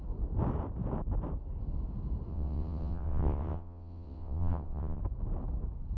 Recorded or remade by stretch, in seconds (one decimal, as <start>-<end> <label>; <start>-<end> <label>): 0.0-2.3 recorded; 2.3-5.0 remade; 5.0-6.0 recorded